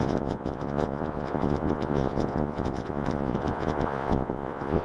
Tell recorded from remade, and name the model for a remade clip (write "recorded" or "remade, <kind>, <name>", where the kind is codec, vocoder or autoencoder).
remade, vocoder, Vocos